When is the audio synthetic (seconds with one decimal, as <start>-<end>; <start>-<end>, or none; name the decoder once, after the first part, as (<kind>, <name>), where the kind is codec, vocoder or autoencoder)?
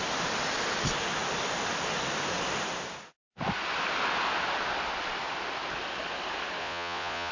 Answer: 6.6-7.3 (vocoder, Vocos)